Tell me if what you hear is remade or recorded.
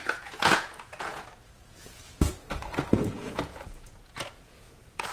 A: remade